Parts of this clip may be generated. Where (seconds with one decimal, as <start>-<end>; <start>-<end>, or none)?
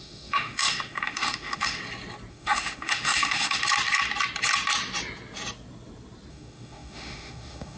0.0-1.8; 2.3-3.6; 6.3-7.8